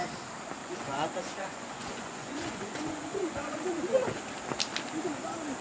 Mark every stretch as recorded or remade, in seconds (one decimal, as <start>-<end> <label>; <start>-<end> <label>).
0.0-0.6 recorded; 0.6-3.8 remade; 3.8-5.6 recorded